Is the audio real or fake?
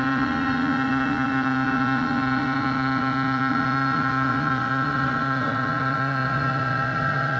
fake